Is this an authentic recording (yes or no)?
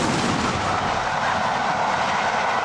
yes